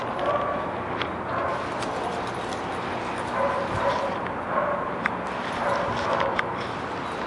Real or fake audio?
real